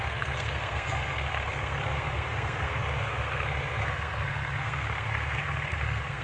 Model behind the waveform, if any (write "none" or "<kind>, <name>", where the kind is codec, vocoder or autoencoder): codec, SNAC